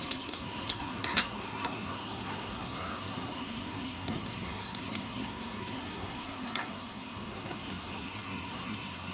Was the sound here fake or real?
fake